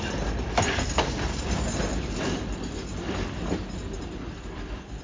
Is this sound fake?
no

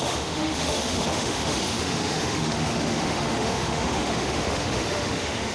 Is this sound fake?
yes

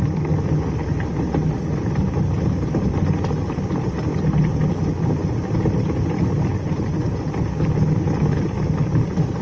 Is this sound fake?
no